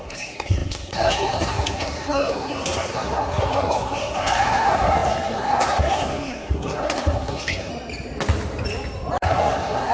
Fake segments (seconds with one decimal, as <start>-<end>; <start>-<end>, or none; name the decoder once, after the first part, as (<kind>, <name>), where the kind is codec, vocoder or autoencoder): 0.0-7.7 (codec, SNAC); 9.2-9.9